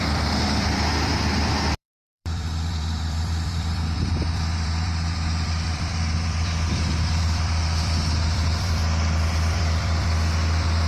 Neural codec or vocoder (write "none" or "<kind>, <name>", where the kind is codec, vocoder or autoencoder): vocoder, BigVGAN v2